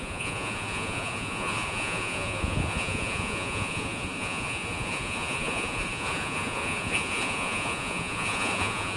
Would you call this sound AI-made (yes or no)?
yes